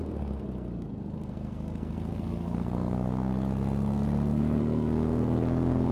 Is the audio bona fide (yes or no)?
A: no